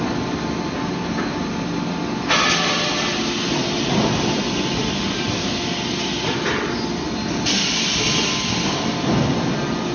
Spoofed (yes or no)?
no